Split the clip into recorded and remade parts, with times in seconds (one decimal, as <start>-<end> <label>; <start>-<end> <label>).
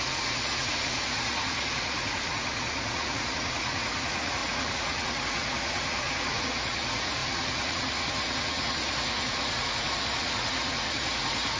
0.0-11.6 remade